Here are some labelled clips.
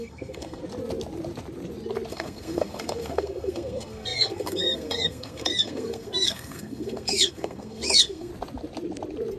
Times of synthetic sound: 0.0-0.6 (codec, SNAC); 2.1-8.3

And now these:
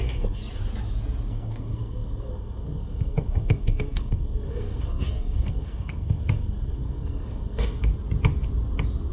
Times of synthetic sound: 0.0-0.4 (codec, SNAC); 1.3-7.9

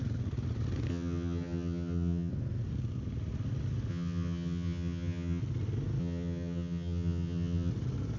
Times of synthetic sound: 0.9-2.3 (vocoder, HiFi-GAN); 3.9-5.4; 6.0-7.7